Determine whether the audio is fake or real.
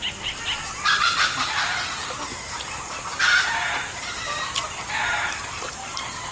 fake